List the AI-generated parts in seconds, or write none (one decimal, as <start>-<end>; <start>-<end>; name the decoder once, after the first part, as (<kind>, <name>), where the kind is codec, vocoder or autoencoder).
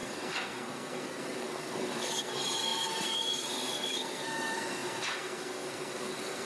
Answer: 0.0-6.5 (codec, SNAC)